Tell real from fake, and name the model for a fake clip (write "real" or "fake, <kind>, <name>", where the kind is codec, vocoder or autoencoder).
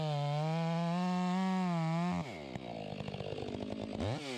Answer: real